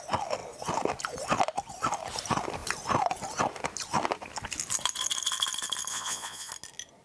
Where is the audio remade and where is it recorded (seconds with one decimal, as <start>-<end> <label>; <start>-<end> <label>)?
0.0-5.9 recorded; 5.9-6.5 remade; 6.5-7.0 recorded